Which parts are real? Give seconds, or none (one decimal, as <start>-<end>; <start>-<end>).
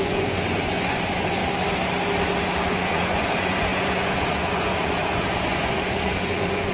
1.4-2.7